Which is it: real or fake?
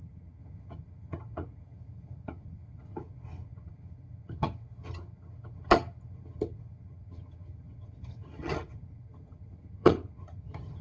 fake